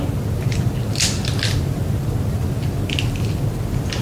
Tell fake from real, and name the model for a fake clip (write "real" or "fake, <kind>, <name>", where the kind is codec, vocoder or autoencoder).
real